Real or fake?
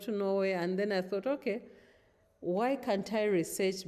real